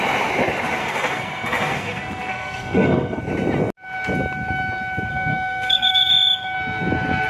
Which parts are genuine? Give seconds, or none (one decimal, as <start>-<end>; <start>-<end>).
0.0-0.8; 3.2-5.1; 6.1-7.3